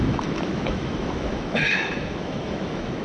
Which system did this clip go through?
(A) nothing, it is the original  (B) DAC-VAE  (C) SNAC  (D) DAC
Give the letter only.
B